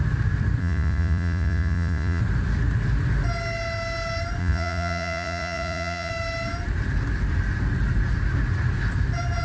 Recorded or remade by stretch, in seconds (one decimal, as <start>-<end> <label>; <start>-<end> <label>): 0.0-0.6 recorded; 0.6-2.2 remade; 2.2-4.4 recorded; 4.4-6.1 remade; 6.1-9.4 recorded